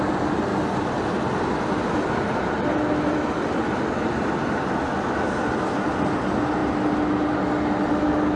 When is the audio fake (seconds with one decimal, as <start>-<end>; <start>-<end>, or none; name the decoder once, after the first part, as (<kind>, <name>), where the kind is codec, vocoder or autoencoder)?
none